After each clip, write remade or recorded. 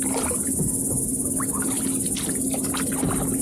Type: recorded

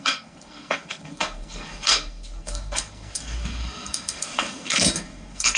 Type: remade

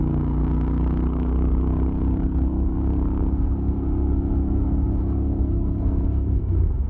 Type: remade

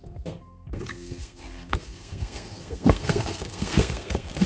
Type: remade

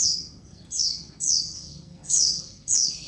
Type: remade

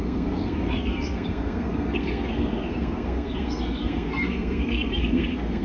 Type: remade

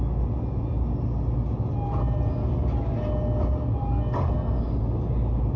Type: recorded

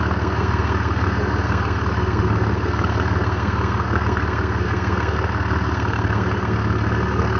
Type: remade